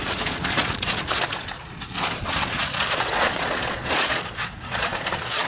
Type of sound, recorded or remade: remade